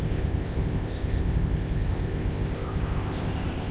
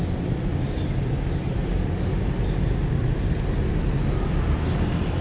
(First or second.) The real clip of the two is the second